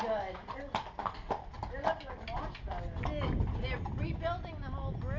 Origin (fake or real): real